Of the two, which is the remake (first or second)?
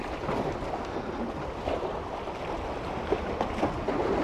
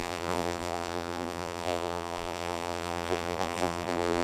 second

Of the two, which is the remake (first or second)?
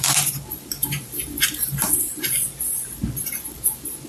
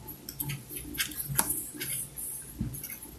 first